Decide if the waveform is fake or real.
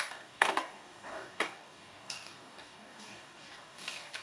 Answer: fake